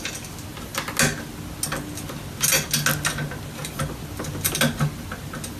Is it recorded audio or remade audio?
recorded